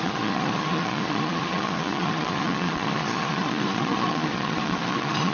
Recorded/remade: remade